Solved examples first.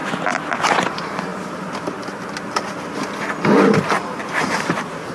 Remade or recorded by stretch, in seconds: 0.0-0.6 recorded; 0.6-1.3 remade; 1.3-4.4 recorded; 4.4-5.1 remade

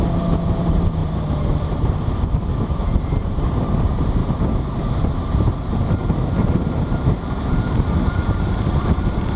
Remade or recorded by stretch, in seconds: 0.0-4.2 remade; 4.2-4.8 recorded; 4.8-9.4 remade

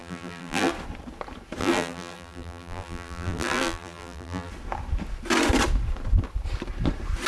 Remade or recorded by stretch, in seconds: 0.0-0.7 remade; 0.7-1.6 recorded; 1.6-4.5 remade; 4.5-7.3 recorded

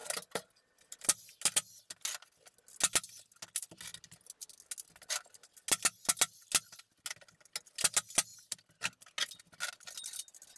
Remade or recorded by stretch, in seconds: 0.0-10.6 recorded

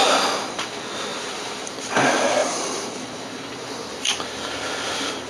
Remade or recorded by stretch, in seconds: 0.0-0.7 remade; 0.7-1.1 recorded; 1.1-1.9 remade; 1.9-2.4 recorded; 2.4-5.3 remade

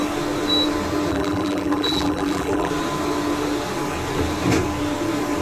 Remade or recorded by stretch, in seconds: 0.0-1.1 recorded; 1.1-2.7 remade; 2.7-5.4 recorded

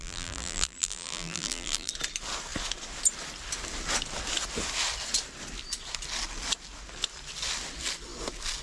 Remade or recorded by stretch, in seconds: 0.0-1.9 remade; 1.9-8.6 recorded